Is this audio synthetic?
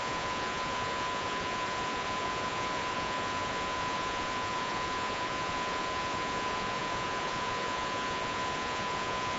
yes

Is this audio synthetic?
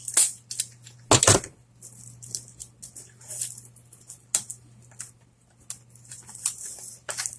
no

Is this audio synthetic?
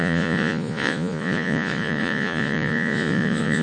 yes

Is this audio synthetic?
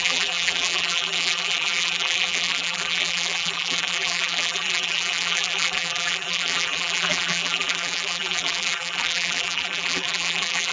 yes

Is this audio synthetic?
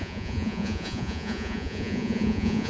yes